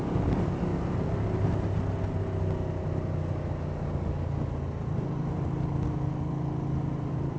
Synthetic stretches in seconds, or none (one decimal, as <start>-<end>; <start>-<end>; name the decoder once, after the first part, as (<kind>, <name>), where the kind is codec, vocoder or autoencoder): none